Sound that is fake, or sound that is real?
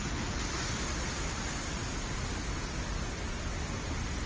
real